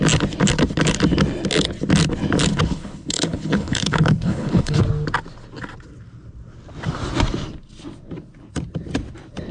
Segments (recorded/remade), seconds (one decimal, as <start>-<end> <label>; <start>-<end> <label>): 0.0-2.5 recorded; 2.5-4.8 remade; 4.8-9.5 recorded